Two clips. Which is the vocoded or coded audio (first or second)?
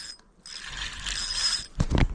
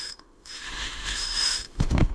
second